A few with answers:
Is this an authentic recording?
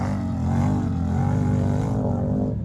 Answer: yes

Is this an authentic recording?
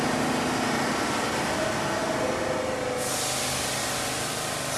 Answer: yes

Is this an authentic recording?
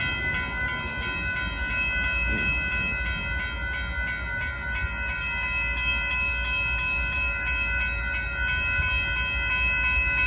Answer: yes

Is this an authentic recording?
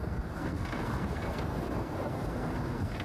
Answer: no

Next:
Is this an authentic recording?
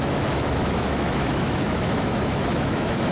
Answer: no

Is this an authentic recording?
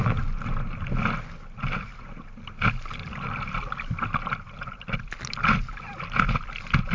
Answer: yes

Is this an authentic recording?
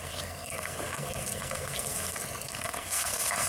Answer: no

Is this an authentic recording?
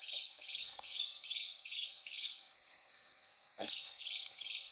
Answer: no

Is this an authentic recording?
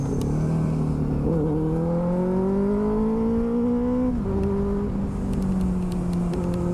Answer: yes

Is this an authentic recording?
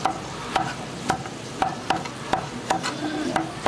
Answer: yes